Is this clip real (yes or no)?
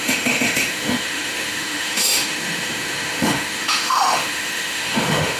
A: no